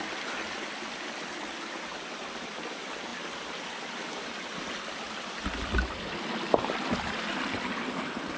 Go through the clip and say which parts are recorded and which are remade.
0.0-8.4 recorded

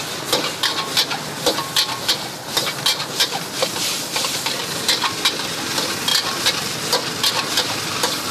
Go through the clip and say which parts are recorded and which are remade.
0.0-8.3 recorded

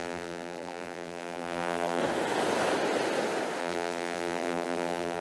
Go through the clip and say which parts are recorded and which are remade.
0.0-2.0 remade; 2.0-3.6 recorded; 3.6-5.2 remade